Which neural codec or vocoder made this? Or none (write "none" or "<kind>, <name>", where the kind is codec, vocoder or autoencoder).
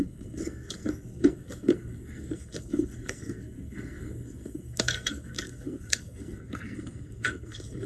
codec, SNAC